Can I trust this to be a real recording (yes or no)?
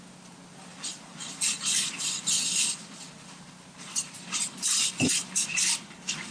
yes